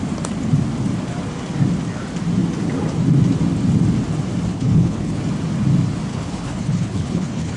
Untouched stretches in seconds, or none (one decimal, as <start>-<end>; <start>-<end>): 0.0-4.5; 5.2-6.1